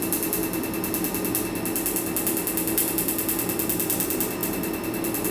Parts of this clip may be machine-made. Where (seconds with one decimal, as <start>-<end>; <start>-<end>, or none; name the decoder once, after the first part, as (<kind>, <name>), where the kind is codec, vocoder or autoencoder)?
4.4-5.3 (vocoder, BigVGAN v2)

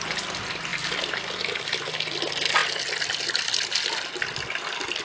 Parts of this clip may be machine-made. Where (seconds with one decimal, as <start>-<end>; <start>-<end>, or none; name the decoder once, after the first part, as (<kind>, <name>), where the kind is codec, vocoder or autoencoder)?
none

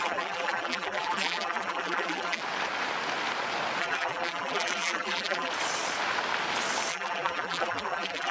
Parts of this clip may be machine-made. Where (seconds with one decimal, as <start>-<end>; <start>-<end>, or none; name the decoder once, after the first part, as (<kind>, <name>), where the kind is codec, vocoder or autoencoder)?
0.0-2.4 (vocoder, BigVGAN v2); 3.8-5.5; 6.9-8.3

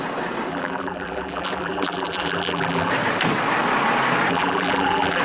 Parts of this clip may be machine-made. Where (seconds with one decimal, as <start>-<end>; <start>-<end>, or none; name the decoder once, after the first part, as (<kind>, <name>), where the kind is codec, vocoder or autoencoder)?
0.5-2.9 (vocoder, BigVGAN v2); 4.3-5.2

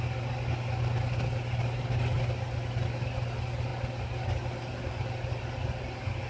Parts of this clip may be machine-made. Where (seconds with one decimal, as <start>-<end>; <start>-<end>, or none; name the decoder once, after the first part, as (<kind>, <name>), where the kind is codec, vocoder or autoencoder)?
3.7-5.4 (vocoder, BigVGAN v2)